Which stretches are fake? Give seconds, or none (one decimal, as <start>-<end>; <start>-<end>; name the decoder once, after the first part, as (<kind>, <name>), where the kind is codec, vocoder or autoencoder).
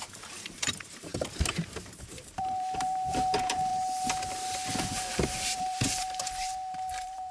0.0-1.1 (vocoder, BigVGAN v2); 2.1-3.7; 4.8-7.3